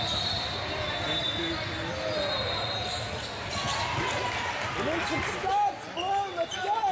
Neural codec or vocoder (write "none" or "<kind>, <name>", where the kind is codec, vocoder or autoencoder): none